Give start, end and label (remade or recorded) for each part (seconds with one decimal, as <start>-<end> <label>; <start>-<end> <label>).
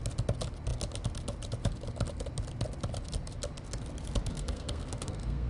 0.0-4.3 recorded; 4.3-5.5 remade